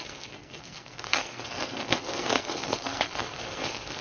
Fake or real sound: fake